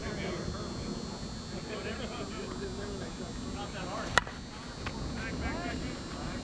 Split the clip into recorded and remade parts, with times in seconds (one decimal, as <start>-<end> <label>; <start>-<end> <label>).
0.0-6.4 recorded